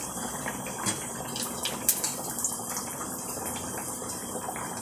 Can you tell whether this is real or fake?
real